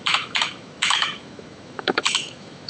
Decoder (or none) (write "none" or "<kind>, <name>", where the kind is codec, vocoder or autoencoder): autoencoder, DAC-VAE